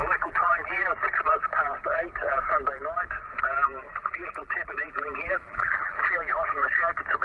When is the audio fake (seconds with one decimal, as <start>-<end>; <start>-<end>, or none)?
0.0-1.0; 3.9-6.6